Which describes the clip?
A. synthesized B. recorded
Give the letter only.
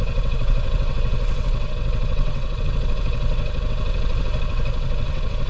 A